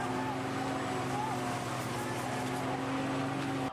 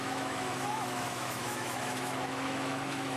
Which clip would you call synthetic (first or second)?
second